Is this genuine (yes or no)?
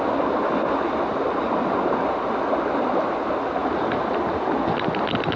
yes